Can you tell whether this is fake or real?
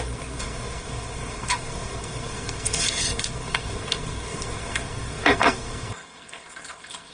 fake